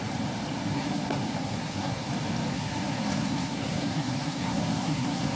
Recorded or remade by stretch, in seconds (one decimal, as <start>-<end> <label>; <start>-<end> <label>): 0.0-0.7 recorded; 0.7-2.1 remade; 2.1-2.5 recorded; 2.5-5.4 remade